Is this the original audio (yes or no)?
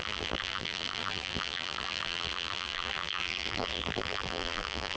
no